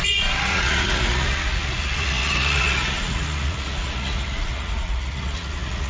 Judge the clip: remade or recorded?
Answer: remade